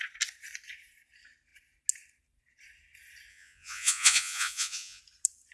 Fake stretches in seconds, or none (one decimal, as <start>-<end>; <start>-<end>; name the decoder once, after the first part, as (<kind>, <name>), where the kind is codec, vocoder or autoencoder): 3.3-5.0 (vocoder, Vocos)